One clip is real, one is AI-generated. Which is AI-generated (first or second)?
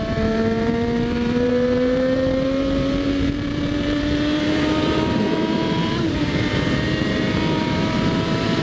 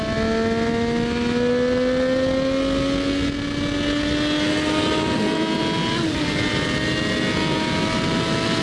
first